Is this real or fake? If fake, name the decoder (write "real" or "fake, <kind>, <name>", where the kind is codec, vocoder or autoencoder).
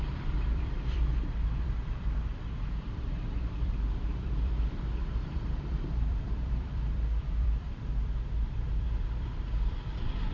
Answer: fake, vocoder, BigVGAN v2